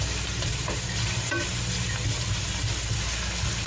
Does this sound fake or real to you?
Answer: real